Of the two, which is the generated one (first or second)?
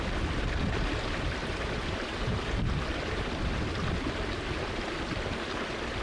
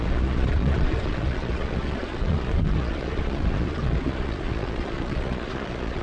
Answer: second